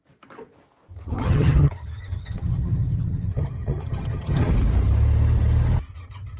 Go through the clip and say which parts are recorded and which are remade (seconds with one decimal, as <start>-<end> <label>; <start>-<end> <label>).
0.0-0.9 recorded; 0.9-4.5 remade; 4.5-5.9 recorded; 5.9-6.4 remade